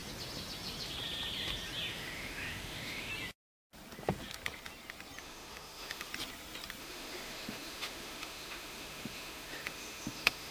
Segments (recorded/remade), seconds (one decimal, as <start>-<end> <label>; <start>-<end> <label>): 0.0-1.9 recorded; 1.9-3.1 remade; 3.1-5.2 recorded; 5.2-6.1 remade; 6.1-6.8 recorded; 6.8-10.5 remade